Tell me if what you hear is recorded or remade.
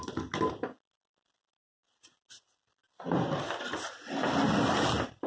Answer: recorded